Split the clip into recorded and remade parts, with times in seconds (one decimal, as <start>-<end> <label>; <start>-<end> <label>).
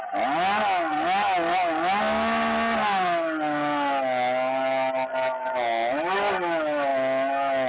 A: 0.0-7.7 recorded